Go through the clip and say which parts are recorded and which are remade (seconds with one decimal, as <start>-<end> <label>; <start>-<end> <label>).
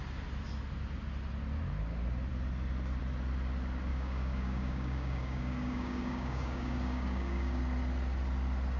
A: 0.0-3.9 recorded; 3.9-7.6 remade; 7.6-8.8 recorded